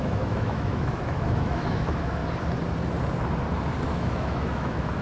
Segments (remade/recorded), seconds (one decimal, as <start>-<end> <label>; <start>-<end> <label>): 0.0-2.2 remade; 2.2-3.9 recorded; 3.9-5.0 remade